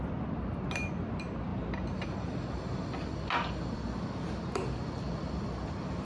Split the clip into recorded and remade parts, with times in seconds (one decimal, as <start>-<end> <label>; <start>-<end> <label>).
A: 0.0-6.1 recorded